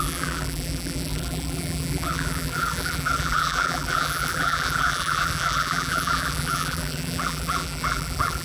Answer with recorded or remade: remade